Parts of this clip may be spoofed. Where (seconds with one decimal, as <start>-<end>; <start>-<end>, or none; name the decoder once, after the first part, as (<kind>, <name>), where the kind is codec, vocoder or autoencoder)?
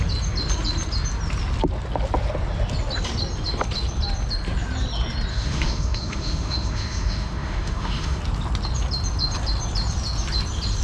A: 5.3-8.2 (autoencoder, DAC-VAE)